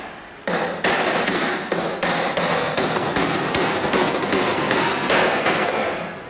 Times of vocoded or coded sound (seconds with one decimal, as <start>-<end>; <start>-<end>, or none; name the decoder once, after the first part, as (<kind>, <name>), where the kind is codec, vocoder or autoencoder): 1.3-1.9 (codec, SNAC); 2.5-6.3